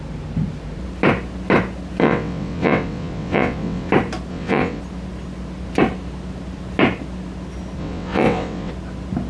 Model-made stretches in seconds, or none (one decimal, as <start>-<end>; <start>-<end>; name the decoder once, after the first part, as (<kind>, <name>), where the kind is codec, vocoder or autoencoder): 2.0-3.9 (vocoder, WaveNeXt); 4.3-4.8; 7.8-8.7